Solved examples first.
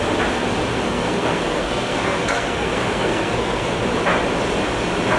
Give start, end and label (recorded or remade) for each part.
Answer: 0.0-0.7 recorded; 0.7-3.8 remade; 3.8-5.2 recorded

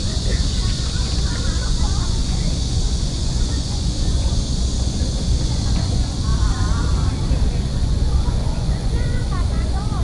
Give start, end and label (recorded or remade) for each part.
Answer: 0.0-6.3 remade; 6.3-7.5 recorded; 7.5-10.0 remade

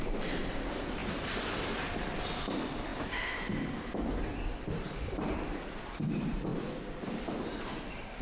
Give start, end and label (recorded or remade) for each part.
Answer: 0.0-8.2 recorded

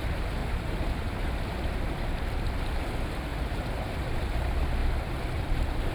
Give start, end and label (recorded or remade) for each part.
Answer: 0.0-0.4 recorded; 0.4-1.4 remade; 1.4-3.3 recorded; 3.3-4.2 remade; 4.2-5.9 recorded

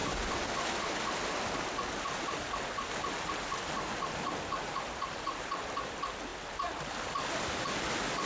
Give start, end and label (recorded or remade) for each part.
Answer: 0.0-8.3 recorded